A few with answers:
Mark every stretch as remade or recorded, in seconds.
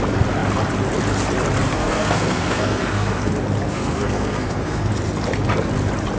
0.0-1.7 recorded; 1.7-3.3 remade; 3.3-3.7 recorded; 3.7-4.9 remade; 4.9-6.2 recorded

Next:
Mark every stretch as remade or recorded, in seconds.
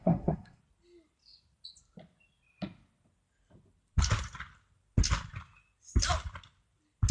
0.0-0.6 remade; 0.6-7.1 recorded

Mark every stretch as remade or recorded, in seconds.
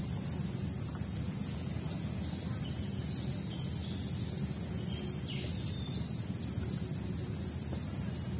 0.0-8.4 recorded